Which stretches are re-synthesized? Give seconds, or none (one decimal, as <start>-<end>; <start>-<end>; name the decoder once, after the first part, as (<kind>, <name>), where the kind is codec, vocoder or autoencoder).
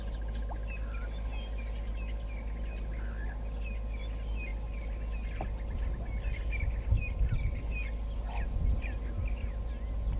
none